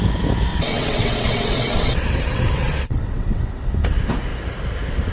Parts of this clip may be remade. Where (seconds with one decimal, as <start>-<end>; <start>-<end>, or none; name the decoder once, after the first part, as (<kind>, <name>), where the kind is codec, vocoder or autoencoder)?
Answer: 0.5-3.6 (vocoder, WaveNeXt)

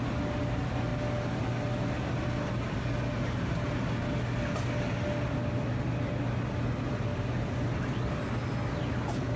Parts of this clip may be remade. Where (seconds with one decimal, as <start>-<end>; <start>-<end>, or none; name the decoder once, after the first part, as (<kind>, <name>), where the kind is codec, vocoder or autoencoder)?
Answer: none

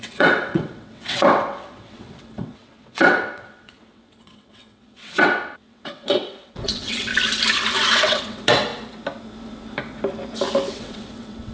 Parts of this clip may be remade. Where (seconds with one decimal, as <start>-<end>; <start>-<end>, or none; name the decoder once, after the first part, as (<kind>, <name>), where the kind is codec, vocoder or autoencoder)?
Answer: 0.0-7.1 (vocoder, WaveNeXt); 7.7-8.7; 10.7-11.5

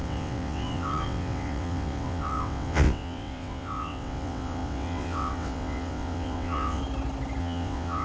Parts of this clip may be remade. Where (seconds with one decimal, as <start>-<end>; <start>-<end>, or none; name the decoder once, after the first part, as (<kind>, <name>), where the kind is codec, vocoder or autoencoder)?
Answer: 0.0-6.8 (vocoder, WaveNeXt); 7.4-8.0

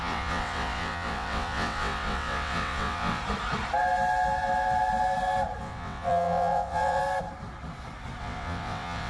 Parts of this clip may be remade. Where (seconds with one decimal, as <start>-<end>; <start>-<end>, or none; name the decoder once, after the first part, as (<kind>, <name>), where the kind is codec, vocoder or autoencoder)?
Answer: 0.0-3.2 (vocoder, WaveNeXt); 5.6-7.0; 8.2-9.1

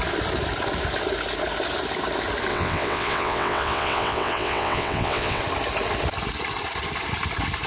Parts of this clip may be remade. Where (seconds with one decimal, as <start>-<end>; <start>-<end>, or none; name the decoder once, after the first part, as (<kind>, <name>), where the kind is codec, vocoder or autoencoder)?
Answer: 2.5-5.4 (vocoder, WaveNeXt)

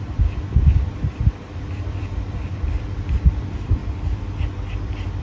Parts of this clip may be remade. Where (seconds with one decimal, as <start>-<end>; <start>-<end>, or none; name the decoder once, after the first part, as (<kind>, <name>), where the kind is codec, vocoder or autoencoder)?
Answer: none